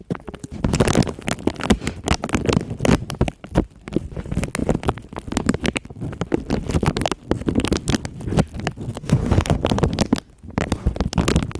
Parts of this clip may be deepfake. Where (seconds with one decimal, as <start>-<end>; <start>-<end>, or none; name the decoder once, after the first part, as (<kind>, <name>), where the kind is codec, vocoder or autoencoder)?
8.9-9.6 (autoencoder, DAC-VAE)